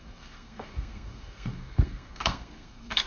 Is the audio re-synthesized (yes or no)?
yes